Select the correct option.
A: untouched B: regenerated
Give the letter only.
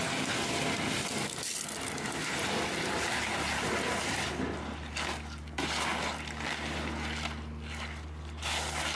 A